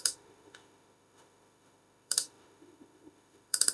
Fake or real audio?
fake